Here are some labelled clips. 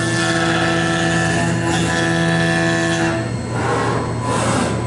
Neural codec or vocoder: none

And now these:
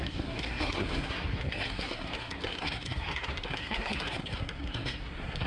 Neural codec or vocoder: codec, SNAC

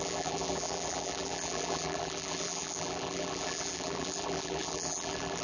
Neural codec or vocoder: vocoder, BigVGAN v2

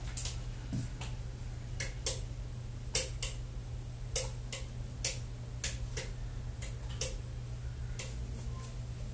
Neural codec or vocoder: none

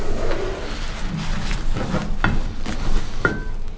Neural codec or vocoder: none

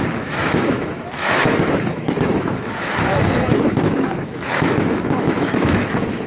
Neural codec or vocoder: autoencoder, DAC-VAE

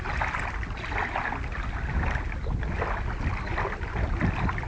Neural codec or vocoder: none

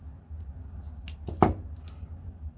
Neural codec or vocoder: none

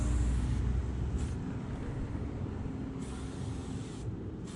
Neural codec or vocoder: none